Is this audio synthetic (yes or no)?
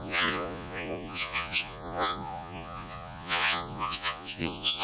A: yes